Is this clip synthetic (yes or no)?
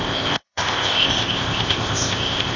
yes